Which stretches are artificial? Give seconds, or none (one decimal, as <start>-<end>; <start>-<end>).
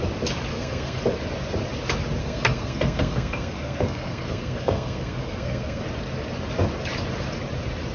0.5-1.0; 2.2-5.8